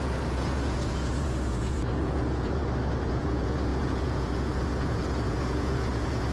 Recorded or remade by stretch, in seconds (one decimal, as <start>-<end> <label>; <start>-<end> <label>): 0.0-2.6 remade; 2.6-3.1 recorded; 3.1-6.3 remade